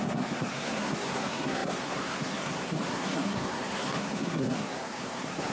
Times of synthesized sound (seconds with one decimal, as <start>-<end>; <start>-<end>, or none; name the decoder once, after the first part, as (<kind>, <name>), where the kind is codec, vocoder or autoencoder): 0.0-5.5 (codec, SNAC)